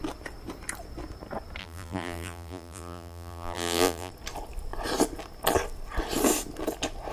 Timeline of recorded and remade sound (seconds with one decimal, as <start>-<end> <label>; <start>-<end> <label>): 0.0-1.6 recorded; 1.6-4.1 remade; 4.1-7.1 recorded